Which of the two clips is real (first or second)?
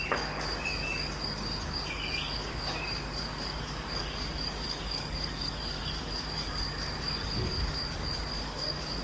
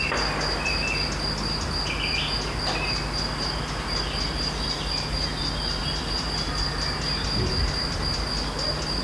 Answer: second